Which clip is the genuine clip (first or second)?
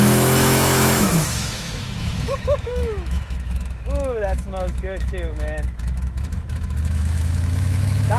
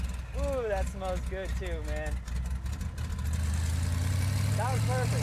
second